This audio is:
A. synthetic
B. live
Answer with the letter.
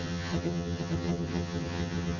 A